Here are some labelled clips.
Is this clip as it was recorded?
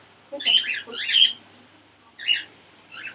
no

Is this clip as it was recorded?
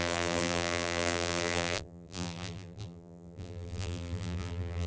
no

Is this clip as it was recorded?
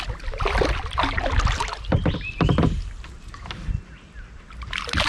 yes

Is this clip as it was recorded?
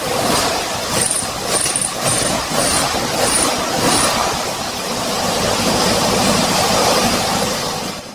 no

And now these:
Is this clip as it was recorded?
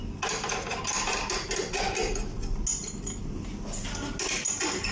yes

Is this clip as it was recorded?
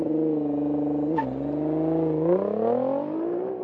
yes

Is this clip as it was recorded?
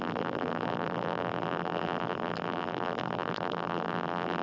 no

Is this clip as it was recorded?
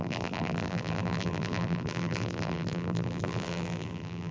no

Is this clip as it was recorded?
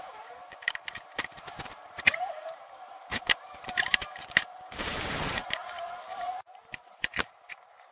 no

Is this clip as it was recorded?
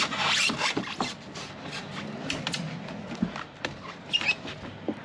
yes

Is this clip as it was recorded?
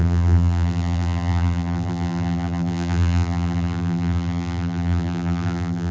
no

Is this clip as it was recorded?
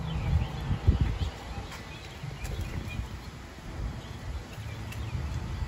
yes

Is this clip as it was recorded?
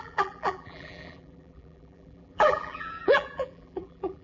no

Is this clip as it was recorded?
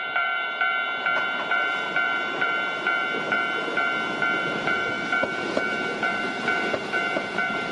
no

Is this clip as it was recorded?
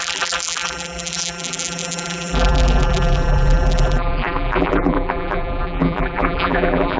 no